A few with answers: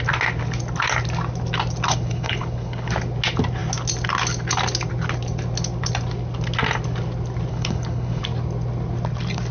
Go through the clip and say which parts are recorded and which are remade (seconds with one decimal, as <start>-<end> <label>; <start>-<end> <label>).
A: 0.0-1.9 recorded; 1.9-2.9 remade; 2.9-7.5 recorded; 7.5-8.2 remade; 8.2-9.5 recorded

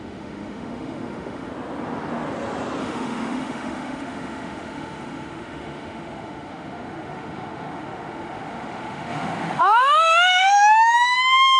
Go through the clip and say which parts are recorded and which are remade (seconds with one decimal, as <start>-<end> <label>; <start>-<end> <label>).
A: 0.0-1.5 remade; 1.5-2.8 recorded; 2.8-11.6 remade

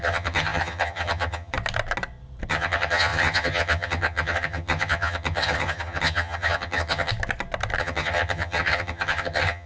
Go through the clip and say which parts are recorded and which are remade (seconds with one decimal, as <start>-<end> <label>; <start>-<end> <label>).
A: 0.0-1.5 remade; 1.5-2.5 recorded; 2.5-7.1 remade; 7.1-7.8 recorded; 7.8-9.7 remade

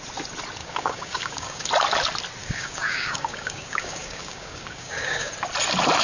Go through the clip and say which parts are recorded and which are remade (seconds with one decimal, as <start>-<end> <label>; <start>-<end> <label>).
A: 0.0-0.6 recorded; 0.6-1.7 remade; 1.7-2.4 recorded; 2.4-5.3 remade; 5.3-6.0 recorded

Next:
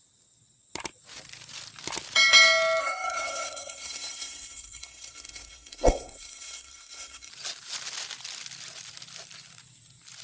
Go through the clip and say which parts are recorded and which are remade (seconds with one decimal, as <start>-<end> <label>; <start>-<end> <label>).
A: 0.0-2.8 recorded; 2.8-7.3 remade; 7.3-10.2 recorded

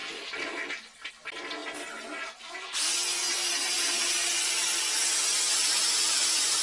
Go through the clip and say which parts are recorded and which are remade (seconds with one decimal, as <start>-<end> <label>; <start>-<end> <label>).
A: 0.0-6.6 recorded